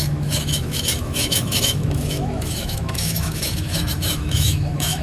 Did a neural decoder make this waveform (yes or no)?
yes